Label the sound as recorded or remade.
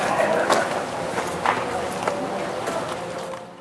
recorded